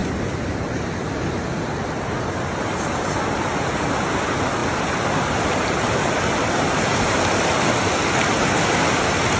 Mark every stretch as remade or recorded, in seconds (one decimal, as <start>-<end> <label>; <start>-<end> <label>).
0.0-9.4 recorded